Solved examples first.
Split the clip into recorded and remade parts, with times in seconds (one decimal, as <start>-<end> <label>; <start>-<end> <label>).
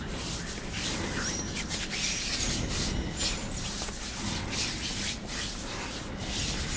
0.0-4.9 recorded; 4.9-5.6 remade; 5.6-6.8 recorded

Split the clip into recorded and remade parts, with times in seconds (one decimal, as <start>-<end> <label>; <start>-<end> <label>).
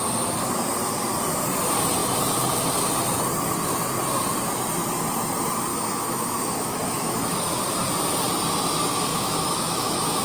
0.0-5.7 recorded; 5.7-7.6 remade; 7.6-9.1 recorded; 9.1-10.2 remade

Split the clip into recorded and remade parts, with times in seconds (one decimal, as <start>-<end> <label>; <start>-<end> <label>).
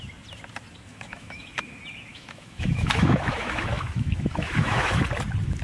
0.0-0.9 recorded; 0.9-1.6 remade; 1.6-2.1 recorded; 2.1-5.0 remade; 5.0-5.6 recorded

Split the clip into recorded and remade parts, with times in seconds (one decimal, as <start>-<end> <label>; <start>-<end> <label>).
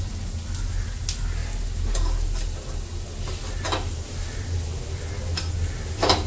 0.0-6.3 recorded